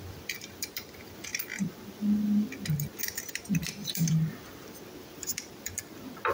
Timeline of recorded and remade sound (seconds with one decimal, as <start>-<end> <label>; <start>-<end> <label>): 0.0-3.8 recorded; 3.8-4.7 remade; 4.7-6.3 recorded